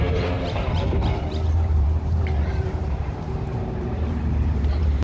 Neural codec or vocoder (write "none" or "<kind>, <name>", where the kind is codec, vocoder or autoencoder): vocoder, BigVGAN v2